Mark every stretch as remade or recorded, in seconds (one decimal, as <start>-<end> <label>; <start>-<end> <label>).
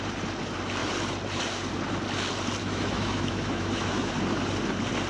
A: 0.0-2.6 recorded; 2.6-4.1 remade; 4.1-5.1 recorded